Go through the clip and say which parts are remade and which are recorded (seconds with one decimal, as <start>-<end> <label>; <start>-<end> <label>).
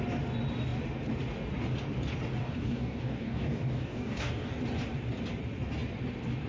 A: 0.0-2.4 recorded; 2.4-4.5 remade; 4.5-6.5 recorded